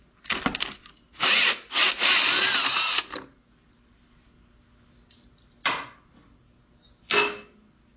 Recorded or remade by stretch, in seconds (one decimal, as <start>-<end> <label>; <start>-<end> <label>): 0.0-8.0 recorded